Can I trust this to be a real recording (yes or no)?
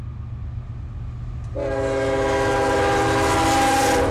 yes